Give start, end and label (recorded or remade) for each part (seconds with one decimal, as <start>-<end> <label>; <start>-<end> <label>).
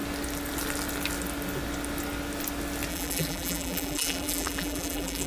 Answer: 0.0-2.9 recorded; 2.9-5.3 remade